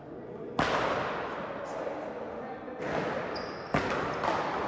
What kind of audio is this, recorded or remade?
recorded